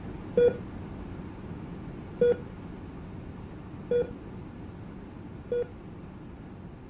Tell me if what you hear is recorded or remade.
recorded